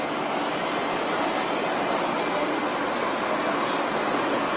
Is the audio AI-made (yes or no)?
no